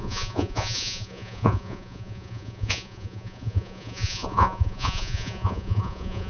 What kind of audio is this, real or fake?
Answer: fake